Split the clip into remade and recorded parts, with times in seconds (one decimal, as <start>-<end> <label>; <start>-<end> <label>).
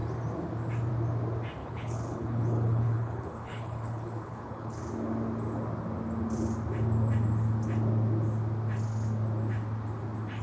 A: 0.0-1.6 recorded; 1.6-4.8 remade; 4.8-10.4 recorded